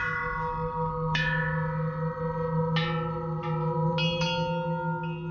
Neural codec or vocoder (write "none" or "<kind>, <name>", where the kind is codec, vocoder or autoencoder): none